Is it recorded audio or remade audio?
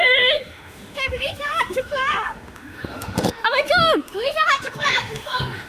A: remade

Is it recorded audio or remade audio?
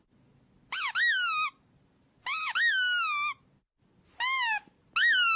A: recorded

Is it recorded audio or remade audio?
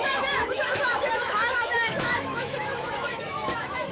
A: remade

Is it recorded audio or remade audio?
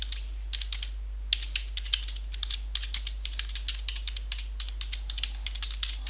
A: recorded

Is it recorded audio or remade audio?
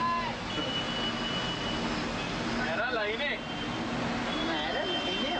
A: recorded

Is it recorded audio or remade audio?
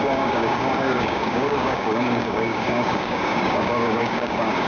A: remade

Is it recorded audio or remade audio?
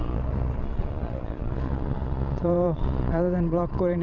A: remade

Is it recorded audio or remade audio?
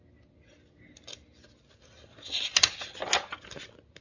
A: recorded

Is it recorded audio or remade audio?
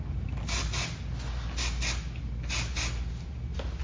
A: recorded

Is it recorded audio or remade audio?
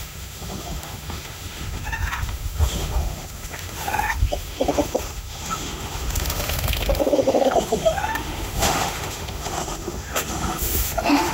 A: remade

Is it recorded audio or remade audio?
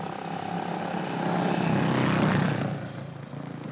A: recorded